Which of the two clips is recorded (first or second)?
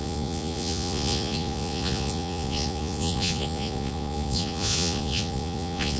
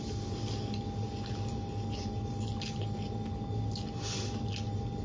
second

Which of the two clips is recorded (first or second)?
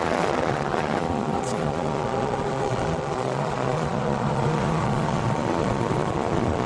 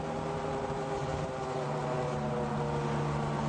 second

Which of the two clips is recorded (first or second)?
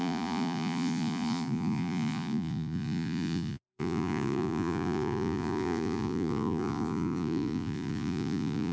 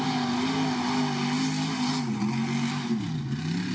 second